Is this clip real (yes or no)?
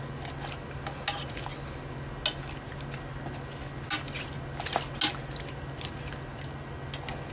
yes